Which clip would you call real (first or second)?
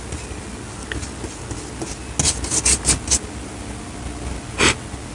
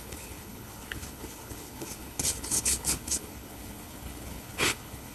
first